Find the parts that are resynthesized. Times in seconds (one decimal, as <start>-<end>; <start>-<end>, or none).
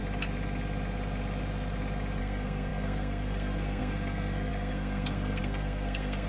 2.2-6.3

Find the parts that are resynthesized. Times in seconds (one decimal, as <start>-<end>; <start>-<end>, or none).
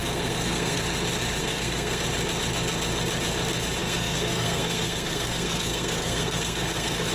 0.0-0.8; 1.4-2.0; 3.8-7.1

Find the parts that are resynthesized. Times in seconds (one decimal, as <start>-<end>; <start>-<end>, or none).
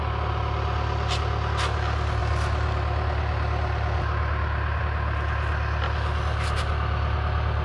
none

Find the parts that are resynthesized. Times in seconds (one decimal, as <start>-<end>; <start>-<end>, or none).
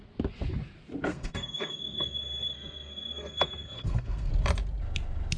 1.1-4.3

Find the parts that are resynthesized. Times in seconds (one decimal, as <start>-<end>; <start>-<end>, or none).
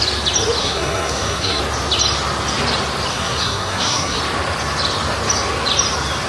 0.6-1.6; 3.1-4.2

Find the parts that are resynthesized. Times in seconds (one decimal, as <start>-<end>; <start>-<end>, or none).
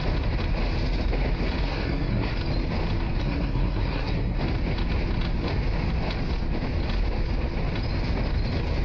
1.6-2.3; 3.2-4.4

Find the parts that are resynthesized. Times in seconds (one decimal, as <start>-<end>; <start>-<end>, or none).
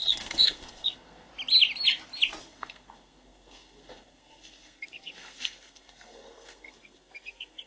0.0-1.3; 2.4-7.7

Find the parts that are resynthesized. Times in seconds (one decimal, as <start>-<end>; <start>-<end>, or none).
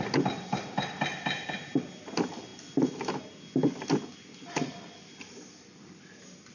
none